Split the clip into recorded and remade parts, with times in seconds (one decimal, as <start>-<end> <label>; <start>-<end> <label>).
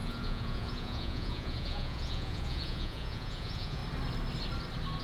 0.0-3.8 remade; 3.8-5.0 recorded